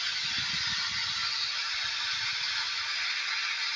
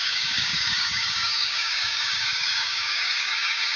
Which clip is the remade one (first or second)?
second